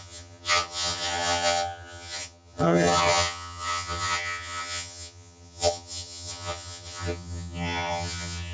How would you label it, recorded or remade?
remade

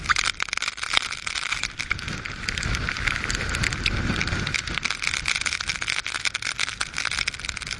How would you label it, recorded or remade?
recorded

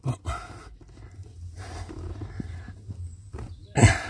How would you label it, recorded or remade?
recorded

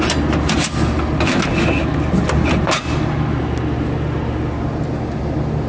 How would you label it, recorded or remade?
recorded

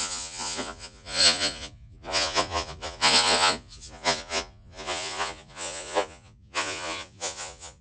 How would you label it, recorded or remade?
remade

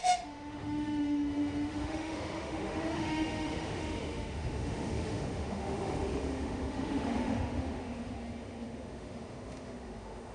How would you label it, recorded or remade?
remade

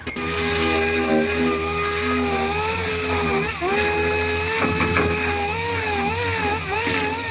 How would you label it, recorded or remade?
recorded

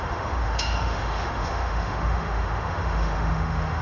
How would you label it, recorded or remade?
remade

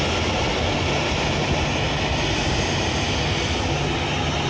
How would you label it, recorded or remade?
recorded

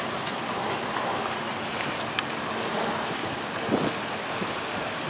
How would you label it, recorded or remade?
recorded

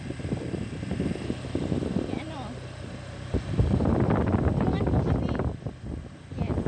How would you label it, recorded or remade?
recorded